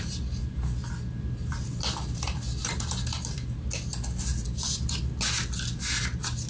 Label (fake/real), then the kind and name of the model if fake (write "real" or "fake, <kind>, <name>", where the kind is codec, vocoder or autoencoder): real